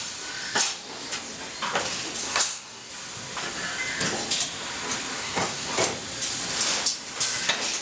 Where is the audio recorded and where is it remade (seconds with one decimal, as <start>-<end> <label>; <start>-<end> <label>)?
0.0-2.2 recorded; 2.2-2.9 remade; 2.9-5.2 recorded; 5.2-5.7 remade; 5.7-7.8 recorded